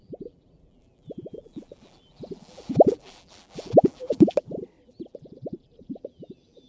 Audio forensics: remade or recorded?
remade